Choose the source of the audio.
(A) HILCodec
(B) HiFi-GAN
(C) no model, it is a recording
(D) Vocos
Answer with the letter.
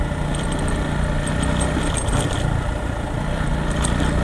C